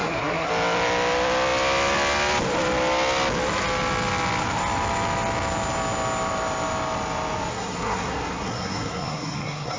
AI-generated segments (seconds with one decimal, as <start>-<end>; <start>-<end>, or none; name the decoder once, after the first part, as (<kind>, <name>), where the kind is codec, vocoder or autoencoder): 0.0-0.5 (codec, SNAC); 7.5-9.8

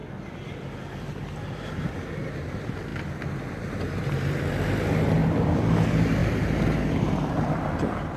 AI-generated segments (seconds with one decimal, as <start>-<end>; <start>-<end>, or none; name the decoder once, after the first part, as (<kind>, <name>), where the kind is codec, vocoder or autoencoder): 2.9-3.6 (vocoder, BigVGAN v2); 5.2-5.7; 6.2-7.7

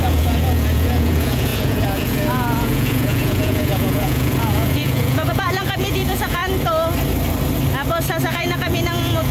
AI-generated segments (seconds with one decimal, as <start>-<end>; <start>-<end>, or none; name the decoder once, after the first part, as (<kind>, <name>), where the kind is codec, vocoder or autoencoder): 0.0-6.4 (vocoder, Vocos); 8.3-9.3

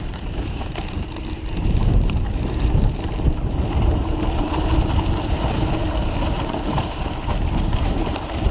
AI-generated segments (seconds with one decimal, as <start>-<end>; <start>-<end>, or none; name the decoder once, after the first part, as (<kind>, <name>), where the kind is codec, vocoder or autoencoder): 0.0-8.5 (vocoder, BigVGAN v2)

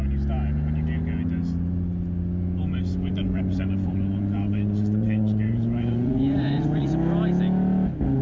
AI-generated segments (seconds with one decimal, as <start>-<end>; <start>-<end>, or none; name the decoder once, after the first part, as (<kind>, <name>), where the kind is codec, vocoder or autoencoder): 3.1-6.9 (vocoder, Vocos)

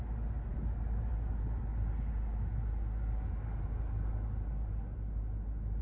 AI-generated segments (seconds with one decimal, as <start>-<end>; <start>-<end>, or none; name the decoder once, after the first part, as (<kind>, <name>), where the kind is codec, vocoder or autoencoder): none

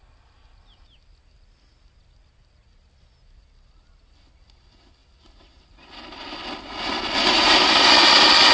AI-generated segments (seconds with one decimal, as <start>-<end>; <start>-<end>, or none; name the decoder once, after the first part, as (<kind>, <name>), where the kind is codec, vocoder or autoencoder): none